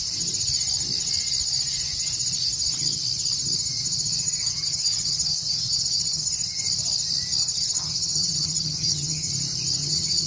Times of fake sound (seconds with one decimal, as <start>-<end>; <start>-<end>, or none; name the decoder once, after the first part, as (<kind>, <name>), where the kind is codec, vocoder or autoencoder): 4.2-6.6 (vocoder, HiFi-GAN); 7.4-9.3; 9.8-10.3